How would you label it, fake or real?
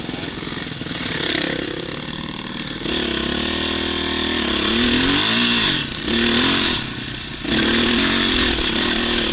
real